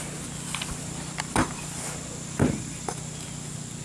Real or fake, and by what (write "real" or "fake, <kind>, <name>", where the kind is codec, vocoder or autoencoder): real